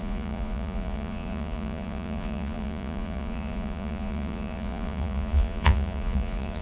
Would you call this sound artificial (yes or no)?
yes